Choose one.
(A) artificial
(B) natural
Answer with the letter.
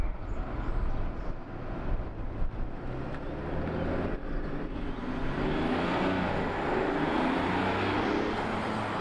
B